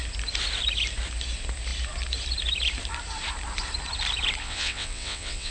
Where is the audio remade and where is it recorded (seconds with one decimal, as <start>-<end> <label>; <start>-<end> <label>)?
0.0-4.4 recorded; 4.4-5.5 remade